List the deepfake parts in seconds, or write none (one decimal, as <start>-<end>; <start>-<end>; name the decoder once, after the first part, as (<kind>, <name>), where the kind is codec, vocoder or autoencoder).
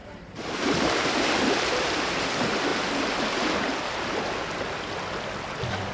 0.0-2.1 (vocoder, BigVGAN v2)